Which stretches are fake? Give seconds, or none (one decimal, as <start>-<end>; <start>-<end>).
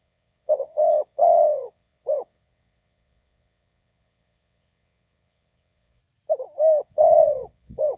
0.0-6.0; 6.8-8.0